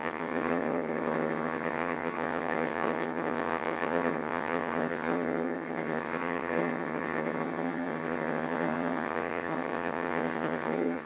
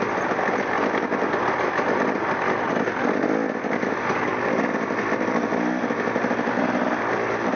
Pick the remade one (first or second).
first